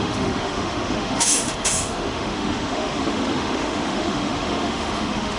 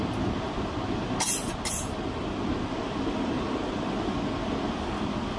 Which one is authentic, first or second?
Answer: second